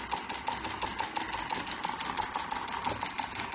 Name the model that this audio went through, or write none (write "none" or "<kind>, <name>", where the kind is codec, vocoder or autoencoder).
none